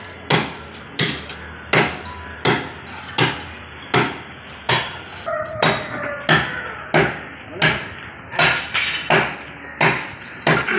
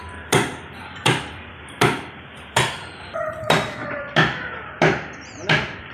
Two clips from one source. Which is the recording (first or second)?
first